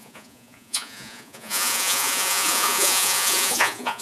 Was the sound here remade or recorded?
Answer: remade